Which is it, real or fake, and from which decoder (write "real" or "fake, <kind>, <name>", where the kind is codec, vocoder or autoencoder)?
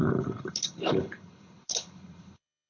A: fake, codec, HILCodec